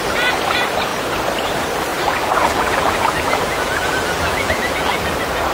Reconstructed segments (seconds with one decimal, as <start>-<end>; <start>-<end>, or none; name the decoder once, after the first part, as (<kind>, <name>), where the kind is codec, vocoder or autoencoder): 1.9-5.0 (vocoder, BigVGAN v2)